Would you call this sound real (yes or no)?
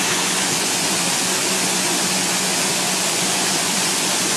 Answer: no